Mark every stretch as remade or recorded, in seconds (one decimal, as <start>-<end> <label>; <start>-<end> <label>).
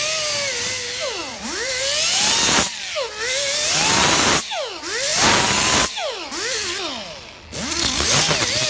0.0-1.2 recorded; 1.2-1.8 remade; 1.8-8.7 recorded